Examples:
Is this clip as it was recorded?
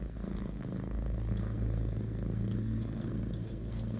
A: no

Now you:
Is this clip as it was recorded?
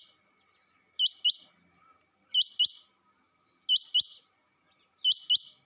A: yes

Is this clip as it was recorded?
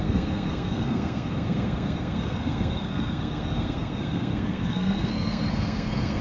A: no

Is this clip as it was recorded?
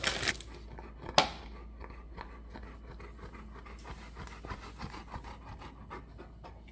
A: yes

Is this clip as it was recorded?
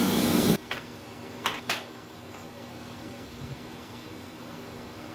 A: no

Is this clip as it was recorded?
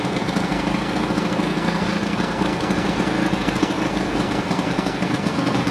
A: no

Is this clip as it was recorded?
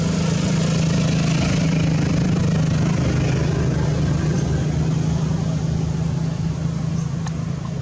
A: yes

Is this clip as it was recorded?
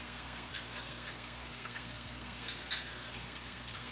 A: no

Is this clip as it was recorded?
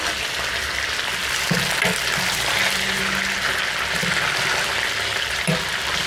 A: yes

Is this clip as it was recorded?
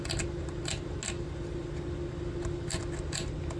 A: yes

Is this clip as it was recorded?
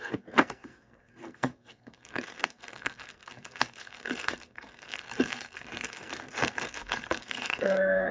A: no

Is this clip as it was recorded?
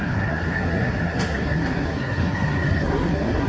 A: no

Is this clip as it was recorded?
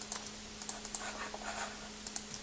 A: yes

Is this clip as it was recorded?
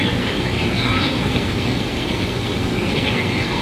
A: no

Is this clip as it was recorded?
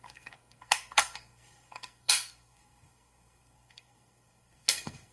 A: no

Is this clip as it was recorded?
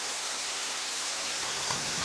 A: no